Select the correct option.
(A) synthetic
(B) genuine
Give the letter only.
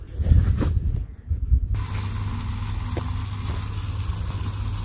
B